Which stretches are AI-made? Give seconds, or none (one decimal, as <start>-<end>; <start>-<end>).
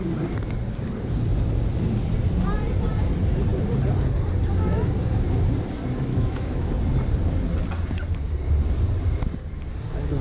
6.1-6.7